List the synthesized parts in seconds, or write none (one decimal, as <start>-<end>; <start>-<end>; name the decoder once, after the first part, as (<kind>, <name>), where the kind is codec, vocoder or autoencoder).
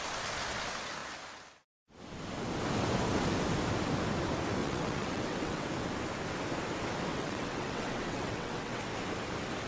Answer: 4.6-5.6 (vocoder, WaveNeXt); 7.1-8.8